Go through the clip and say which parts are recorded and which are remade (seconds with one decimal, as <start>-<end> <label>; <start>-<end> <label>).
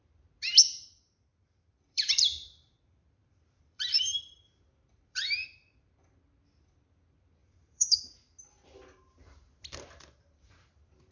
0.0-1.3 recorded; 1.3-6.1 remade; 6.1-7.4 recorded; 7.4-8.0 remade; 8.0-11.1 recorded